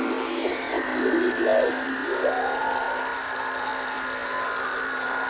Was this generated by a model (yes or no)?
no